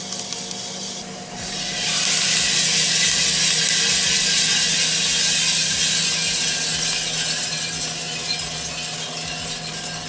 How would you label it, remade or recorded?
recorded